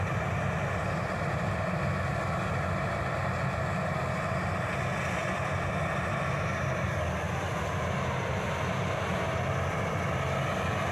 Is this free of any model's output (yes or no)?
yes